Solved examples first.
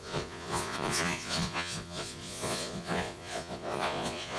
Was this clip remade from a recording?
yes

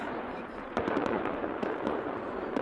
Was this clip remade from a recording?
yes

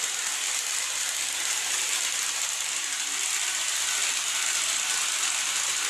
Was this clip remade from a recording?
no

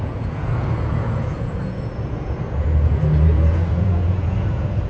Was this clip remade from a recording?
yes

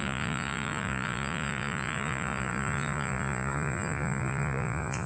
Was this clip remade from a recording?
yes